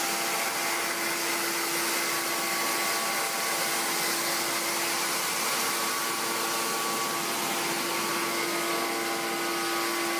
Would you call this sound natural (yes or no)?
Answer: yes